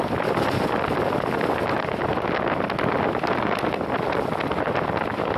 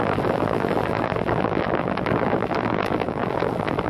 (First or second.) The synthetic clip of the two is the second